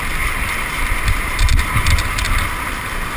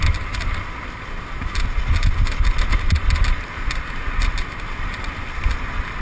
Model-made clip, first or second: first